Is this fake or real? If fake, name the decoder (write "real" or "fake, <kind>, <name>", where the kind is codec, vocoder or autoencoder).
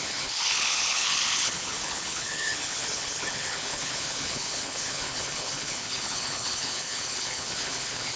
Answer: fake, codec, HILCodec